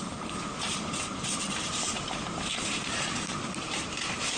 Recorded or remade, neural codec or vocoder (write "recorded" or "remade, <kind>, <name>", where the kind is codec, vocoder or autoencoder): remade, vocoder, BigVGAN v2